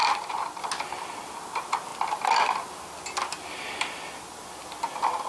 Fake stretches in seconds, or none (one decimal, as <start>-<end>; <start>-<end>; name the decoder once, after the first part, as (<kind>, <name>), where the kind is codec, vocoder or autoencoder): none